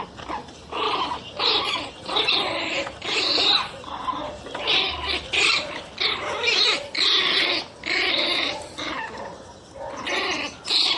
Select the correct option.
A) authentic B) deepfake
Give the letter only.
A